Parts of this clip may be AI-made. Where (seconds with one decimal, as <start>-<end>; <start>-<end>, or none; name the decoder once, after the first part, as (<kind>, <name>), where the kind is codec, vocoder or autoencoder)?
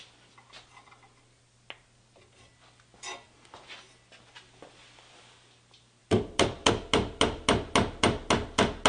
6.0-6.7 (vocoder, BigVGAN v2)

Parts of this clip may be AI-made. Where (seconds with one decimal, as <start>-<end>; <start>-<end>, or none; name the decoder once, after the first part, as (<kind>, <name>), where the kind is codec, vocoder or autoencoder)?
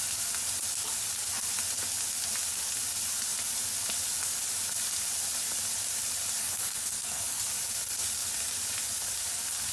6.4-7.4 (codec, SNAC)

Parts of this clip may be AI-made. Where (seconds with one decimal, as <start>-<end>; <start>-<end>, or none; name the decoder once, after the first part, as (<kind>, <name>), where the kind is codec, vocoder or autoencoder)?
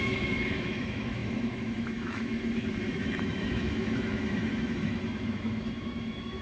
0.0-6.4 (autoencoder, DAC-VAE)